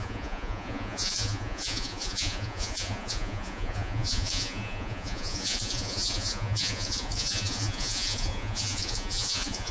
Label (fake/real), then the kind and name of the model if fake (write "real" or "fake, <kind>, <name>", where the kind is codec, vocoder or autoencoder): fake, vocoder, Vocos